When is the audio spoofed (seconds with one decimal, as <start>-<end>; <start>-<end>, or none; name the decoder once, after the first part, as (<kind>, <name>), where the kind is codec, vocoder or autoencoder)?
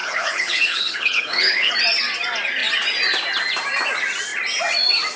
0.0-1.7 (codec, HILCodec)